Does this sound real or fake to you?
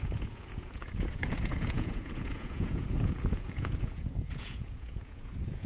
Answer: fake